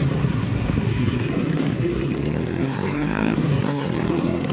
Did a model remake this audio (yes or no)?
yes